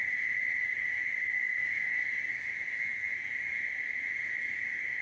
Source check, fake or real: real